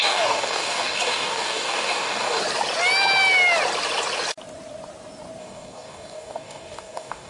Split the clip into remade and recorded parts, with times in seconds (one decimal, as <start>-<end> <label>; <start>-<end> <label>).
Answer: 0.0-2.4 remade; 2.4-5.4 recorded; 5.4-7.3 remade